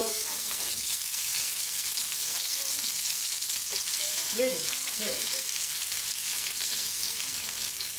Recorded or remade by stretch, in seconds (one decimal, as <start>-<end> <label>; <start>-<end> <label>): 0.0-8.0 remade